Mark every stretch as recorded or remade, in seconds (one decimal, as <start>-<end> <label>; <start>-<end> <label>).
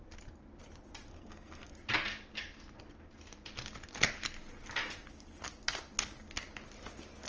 0.0-1.1 recorded; 1.1-1.7 remade; 1.7-7.3 recorded